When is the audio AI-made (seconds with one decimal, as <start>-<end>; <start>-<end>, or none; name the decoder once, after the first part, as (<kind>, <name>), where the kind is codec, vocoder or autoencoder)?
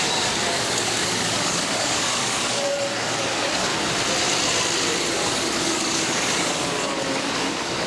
0.0-3.7 (codec, DAC); 5.1-7.9